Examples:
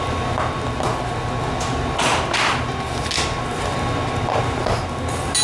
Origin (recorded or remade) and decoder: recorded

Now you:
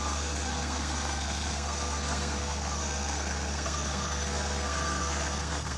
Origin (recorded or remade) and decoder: remade, codec, SNAC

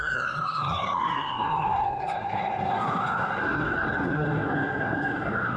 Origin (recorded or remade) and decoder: remade, codec, SNAC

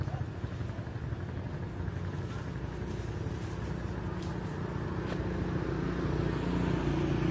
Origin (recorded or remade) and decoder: recorded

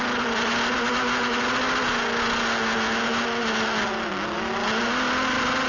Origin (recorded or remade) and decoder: recorded